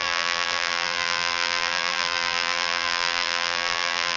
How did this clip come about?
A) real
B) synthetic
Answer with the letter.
B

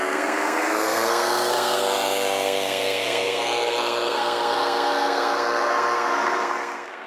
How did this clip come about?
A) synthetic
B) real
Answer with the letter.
A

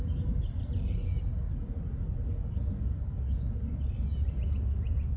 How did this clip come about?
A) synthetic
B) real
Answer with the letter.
B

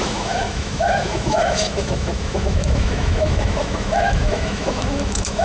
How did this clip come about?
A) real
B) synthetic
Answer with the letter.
B